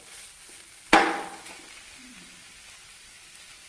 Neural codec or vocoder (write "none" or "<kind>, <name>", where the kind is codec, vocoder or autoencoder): none